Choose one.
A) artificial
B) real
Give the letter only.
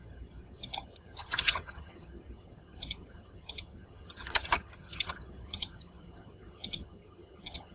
A